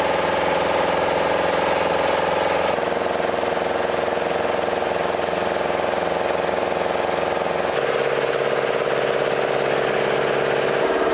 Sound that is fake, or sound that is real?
real